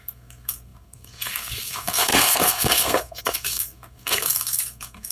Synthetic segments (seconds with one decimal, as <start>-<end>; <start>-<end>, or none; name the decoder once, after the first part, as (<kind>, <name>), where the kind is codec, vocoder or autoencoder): 0.0-5.1 (codec, SNAC)